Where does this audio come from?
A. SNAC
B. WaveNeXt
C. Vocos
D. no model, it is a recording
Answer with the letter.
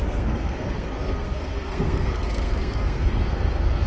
A